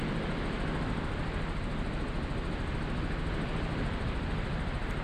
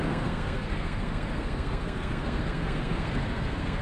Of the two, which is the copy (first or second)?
second